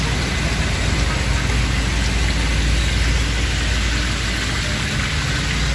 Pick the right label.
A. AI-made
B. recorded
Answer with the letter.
B